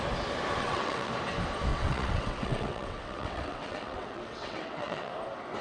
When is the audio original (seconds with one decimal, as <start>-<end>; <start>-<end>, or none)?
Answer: 0.0-0.6; 1.1-1.7; 5.1-5.6